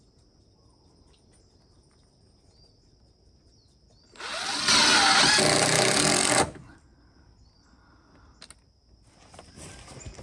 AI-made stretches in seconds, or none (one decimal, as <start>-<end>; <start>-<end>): none